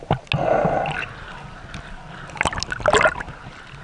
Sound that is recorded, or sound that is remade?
recorded